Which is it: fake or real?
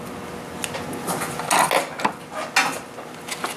real